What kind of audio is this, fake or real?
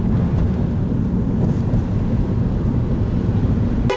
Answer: real